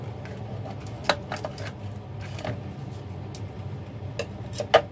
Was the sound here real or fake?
real